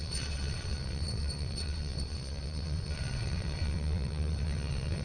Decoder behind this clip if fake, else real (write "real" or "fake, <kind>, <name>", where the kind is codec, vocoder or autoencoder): fake, vocoder, WaveNeXt